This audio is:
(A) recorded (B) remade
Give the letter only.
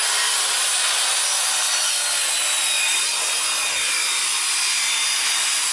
A